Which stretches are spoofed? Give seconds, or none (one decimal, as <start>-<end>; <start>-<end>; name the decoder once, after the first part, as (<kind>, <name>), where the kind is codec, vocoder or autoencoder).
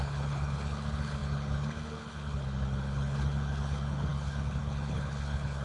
0.0-5.6 (codec, HILCodec)